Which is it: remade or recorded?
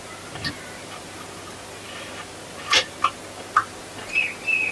recorded